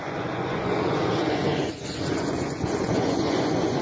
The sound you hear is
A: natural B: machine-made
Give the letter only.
B